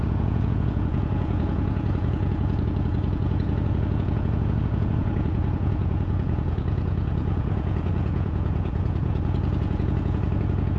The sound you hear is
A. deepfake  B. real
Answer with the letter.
A